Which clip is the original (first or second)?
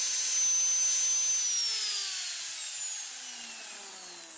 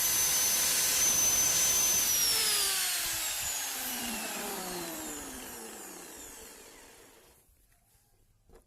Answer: first